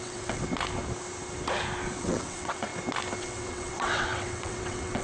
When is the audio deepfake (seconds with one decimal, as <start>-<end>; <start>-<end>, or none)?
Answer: 0.0-0.4; 2.0-2.7; 3.2-5.0